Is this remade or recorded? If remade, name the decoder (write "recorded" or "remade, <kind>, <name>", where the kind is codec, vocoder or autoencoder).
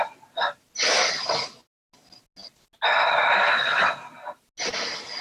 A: recorded